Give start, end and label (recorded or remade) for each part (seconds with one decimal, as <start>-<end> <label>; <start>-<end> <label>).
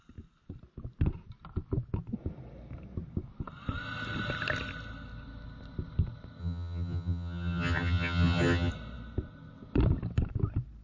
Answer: 0.0-6.4 recorded; 6.4-8.7 remade; 8.7-10.8 recorded